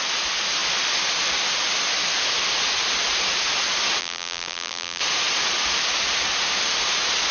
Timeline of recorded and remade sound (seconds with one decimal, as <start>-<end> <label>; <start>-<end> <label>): 0.0-4.0 recorded; 4.0-5.0 remade; 5.0-7.3 recorded